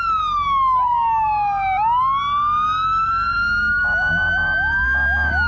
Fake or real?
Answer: real